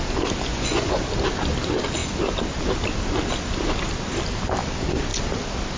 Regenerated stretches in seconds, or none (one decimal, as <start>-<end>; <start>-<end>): 0.5-1.0